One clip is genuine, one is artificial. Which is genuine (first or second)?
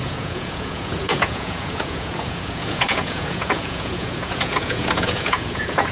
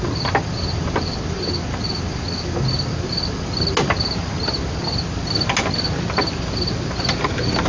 second